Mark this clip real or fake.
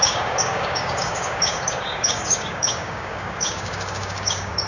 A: fake